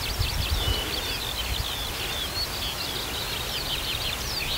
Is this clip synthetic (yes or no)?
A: no